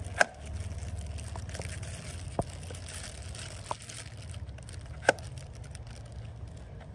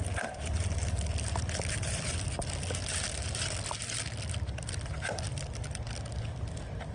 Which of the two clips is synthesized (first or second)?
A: second